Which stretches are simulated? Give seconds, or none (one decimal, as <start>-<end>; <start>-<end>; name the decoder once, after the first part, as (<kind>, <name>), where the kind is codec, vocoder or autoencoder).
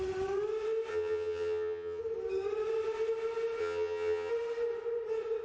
0.9-2.0 (vocoder, HiFi-GAN); 3.6-4.3